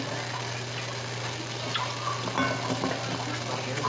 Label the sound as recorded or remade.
recorded